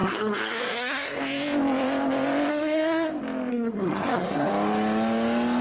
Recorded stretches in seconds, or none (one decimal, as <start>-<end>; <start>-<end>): 1.2-2.5; 3.1-3.5; 4.5-5.6